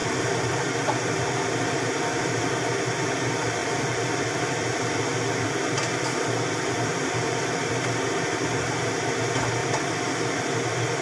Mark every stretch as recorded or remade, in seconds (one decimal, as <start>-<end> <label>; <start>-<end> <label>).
0.0-2.5 remade; 2.5-3.6 recorded; 3.6-7.7 remade; 7.7-9.6 recorded; 9.6-10.4 remade; 10.4-11.0 recorded